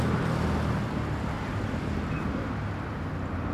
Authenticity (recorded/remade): recorded